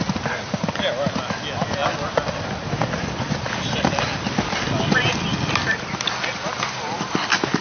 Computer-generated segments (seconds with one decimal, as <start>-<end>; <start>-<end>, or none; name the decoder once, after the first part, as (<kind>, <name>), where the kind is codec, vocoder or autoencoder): none